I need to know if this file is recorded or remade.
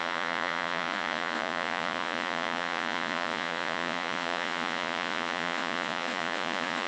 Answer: remade